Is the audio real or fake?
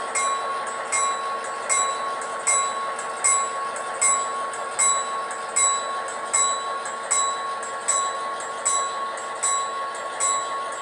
real